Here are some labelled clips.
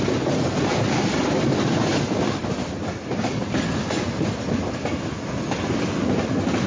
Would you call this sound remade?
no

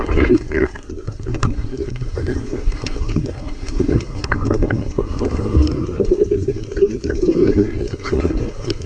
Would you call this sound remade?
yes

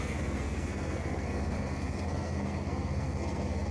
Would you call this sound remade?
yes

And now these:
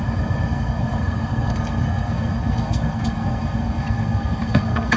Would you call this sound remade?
yes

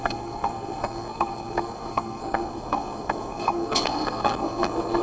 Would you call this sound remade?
yes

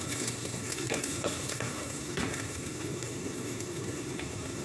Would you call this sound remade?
yes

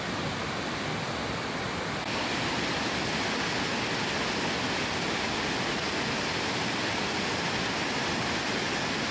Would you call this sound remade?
no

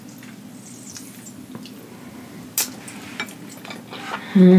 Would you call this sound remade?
no